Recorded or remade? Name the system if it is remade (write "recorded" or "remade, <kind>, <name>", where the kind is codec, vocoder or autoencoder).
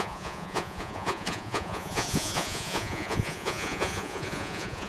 remade, vocoder, Vocos